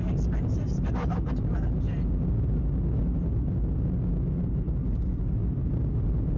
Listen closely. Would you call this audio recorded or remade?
recorded